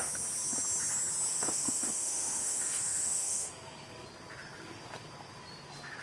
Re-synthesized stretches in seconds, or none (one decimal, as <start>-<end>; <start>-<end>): 1.3-3.5